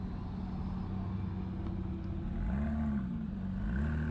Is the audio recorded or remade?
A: recorded